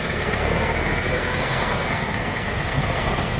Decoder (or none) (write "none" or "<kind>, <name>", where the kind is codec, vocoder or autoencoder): codec, SNAC